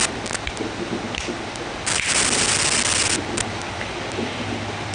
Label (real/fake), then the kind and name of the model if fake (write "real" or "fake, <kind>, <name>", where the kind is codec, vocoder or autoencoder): real